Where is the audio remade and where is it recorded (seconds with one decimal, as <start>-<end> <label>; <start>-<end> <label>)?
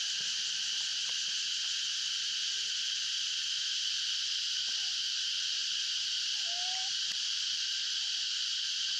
0.0-9.0 recorded